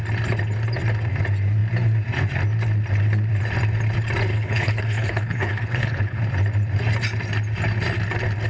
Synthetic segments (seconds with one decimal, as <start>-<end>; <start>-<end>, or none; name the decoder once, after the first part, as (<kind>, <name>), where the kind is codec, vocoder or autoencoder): 4.3-6.2 (codec, HILCodec)